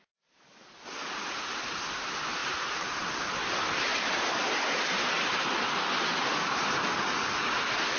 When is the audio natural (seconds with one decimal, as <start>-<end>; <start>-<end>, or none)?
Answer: 0.0-2.4; 3.1-8.0